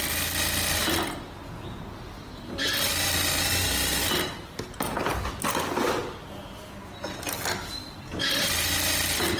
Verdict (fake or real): real